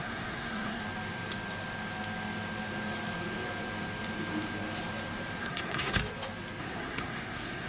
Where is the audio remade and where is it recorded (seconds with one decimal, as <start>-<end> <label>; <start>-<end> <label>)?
0.0-0.8 remade; 0.8-5.4 recorded; 5.4-6.0 remade; 6.0-6.6 recorded; 6.6-7.7 remade